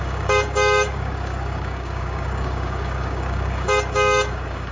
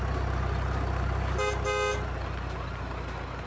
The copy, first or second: first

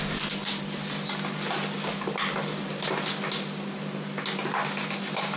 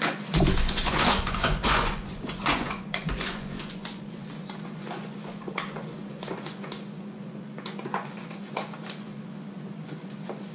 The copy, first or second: second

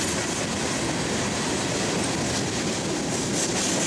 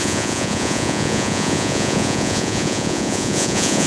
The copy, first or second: second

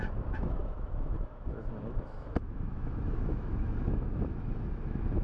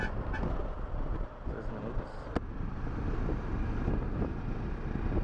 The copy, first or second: first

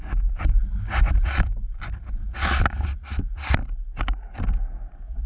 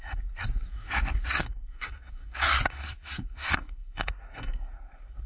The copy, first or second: second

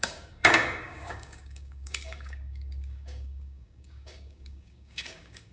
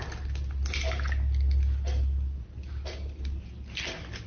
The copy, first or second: first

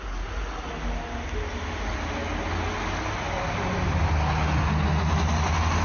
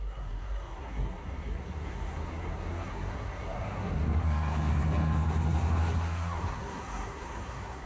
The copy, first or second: second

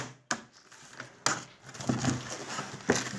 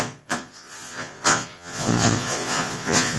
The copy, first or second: second